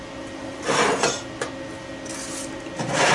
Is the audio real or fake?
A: real